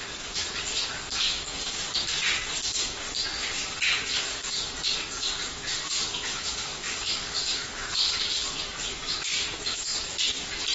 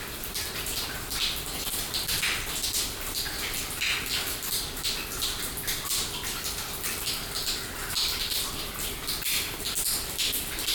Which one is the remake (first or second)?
first